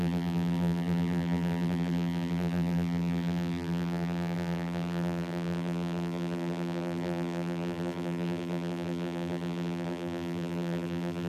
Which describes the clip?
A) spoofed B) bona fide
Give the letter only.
A